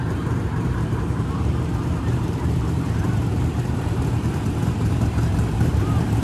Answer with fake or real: fake